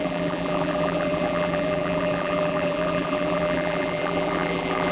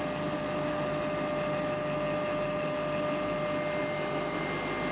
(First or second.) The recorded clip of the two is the second